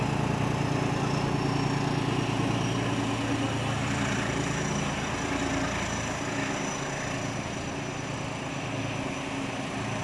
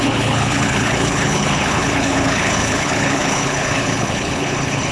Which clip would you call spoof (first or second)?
second